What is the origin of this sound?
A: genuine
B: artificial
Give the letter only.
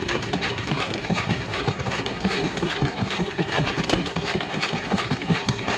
B